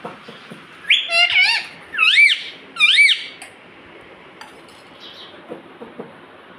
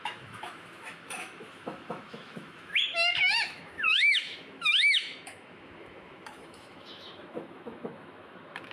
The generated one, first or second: second